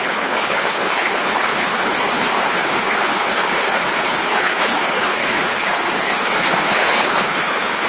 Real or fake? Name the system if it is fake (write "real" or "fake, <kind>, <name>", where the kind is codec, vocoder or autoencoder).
fake, codec, HILCodec